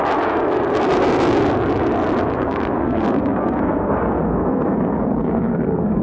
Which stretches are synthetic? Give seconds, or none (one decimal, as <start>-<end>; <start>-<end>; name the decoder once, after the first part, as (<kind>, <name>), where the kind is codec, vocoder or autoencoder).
2.3-6.0 (codec, SNAC)